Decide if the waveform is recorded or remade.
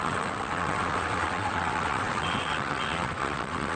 remade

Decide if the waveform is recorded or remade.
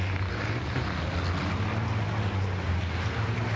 recorded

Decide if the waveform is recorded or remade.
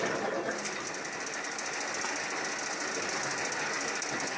recorded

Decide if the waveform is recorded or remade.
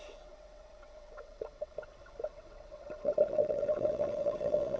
remade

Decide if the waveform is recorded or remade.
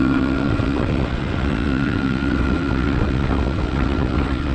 remade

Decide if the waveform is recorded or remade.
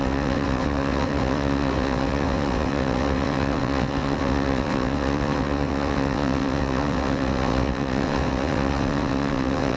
remade